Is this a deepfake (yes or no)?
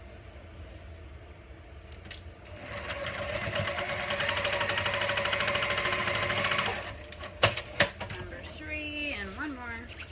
no